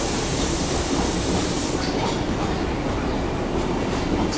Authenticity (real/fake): fake